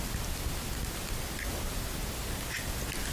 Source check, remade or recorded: recorded